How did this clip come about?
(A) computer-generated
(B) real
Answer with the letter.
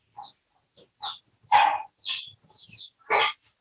B